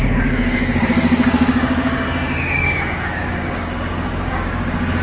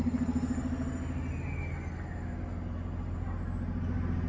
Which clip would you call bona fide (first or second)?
second